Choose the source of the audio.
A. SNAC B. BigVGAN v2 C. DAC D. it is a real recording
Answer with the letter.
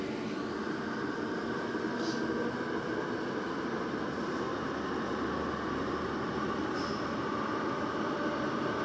D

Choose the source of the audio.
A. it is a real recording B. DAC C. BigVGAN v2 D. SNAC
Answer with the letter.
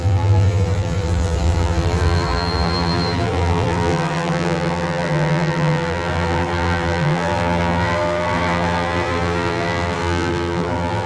C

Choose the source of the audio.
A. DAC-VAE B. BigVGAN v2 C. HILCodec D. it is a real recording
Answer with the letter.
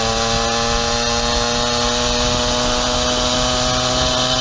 D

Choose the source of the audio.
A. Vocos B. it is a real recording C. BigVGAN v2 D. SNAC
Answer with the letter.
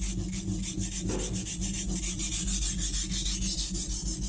B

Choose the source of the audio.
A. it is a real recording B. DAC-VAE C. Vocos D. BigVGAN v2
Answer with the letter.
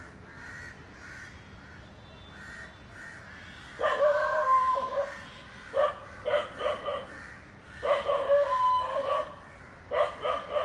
A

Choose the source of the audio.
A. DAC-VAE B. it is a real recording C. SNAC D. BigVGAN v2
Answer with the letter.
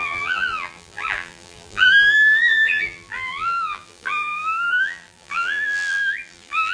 D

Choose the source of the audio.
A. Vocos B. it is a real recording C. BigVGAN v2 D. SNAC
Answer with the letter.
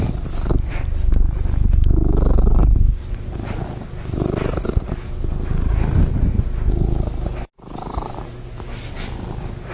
B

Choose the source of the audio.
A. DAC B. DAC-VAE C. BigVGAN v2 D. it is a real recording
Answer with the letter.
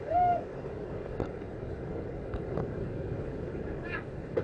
A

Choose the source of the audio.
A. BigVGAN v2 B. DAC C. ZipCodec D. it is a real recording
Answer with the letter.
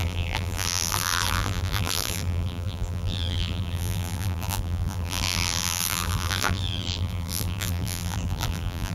A